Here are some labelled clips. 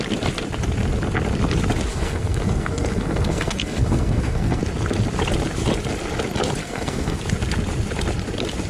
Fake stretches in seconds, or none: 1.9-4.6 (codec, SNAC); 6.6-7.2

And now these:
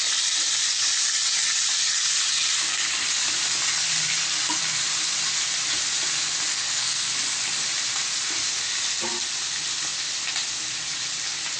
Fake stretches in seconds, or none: 6.5-7.1 (codec, SNAC)